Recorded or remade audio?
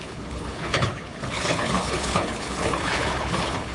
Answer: remade